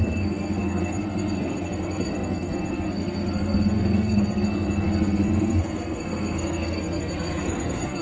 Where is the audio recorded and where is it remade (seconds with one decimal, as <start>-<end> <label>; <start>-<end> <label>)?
0.0-8.0 remade